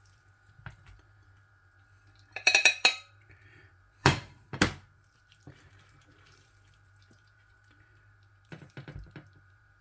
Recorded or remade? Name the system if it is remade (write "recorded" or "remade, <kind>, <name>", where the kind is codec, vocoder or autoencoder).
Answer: remade, vocoder, BigVGAN v2